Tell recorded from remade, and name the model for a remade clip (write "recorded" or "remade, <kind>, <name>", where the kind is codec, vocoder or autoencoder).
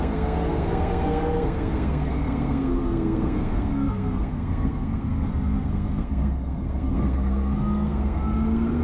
remade, codec, SNAC